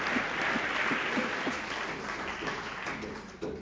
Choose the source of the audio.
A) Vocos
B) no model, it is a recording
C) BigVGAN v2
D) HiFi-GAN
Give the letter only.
B